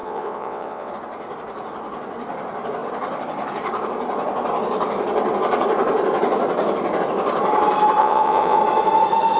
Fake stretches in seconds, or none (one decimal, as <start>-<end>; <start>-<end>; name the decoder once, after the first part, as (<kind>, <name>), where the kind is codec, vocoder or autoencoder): 0.0-0.9 (vocoder, WaveNeXt); 8.0-8.6